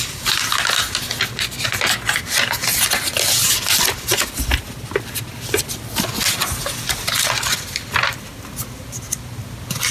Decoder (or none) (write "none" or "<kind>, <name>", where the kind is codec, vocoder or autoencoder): none